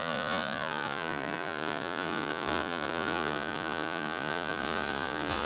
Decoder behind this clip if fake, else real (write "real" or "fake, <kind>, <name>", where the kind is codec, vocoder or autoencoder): fake, vocoder, Vocos